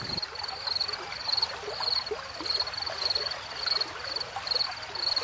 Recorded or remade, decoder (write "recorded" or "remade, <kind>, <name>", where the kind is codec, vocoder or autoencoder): recorded